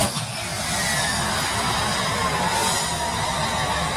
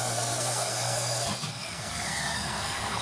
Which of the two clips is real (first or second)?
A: first